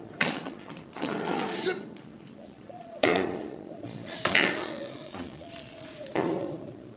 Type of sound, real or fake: fake